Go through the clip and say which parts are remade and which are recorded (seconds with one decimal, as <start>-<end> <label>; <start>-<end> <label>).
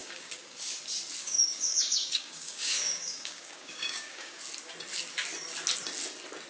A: 0.0-0.7 remade; 0.7-1.2 recorded; 1.2-4.4 remade; 4.4-6.5 recorded